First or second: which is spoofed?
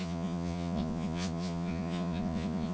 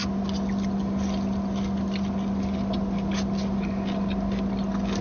first